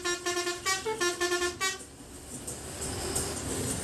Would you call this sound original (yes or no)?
yes